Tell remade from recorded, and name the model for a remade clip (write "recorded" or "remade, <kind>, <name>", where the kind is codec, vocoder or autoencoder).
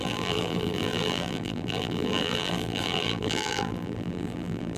remade, vocoder, BigVGAN v2